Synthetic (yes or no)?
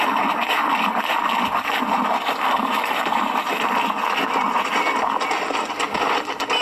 no